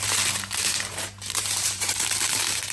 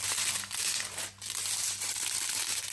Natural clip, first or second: second